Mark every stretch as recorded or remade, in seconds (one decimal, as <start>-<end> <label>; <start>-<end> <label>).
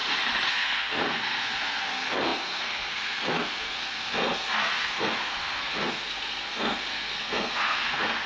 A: 0.0-0.5 recorded; 0.5-8.3 remade